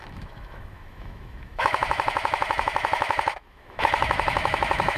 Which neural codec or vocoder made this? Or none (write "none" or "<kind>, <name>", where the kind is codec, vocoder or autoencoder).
autoencoder, DAC-VAE